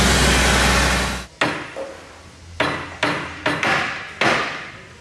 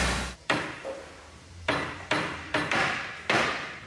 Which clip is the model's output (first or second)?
second